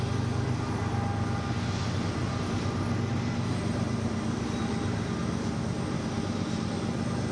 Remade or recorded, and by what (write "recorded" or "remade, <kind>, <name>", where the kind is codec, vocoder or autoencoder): recorded